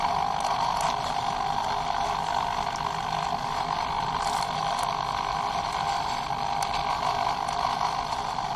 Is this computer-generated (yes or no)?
no